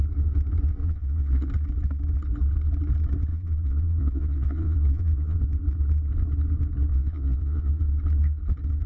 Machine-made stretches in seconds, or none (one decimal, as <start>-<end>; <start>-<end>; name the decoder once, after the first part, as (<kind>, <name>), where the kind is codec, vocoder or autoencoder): 0.8-1.5 (vocoder, Vocos); 3.3-5.4; 6.9-7.8